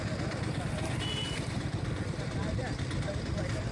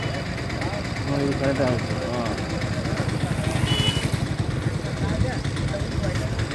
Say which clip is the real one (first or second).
second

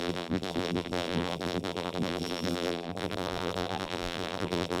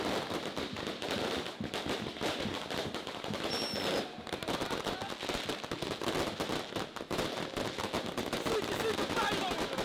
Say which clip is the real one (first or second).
second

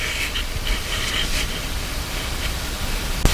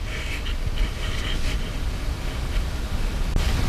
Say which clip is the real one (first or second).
second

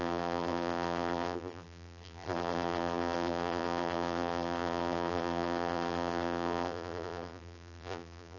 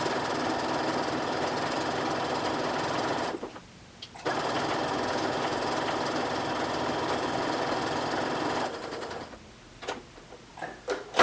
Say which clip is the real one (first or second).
second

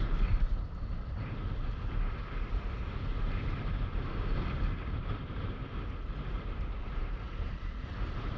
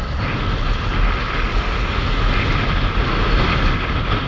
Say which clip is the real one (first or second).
second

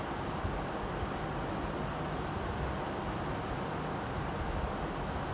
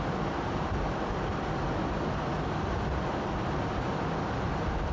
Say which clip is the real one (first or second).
first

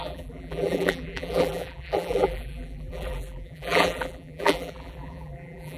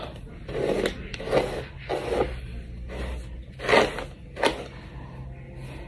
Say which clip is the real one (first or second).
second